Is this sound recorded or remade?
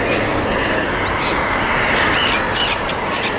recorded